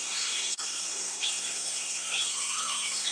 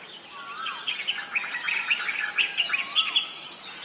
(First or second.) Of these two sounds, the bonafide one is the second